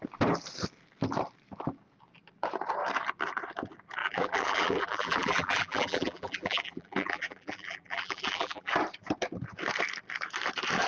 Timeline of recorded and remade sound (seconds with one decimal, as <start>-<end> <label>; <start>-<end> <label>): 0.0-4.0 recorded; 4.0-8.7 remade; 8.7-10.9 recorded